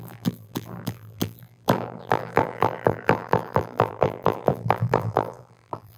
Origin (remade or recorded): remade